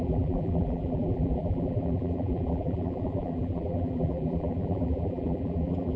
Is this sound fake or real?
fake